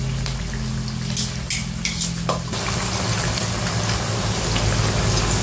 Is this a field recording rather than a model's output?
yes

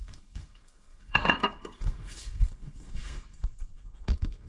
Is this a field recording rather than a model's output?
no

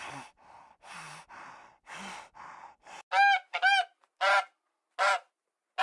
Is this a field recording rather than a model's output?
yes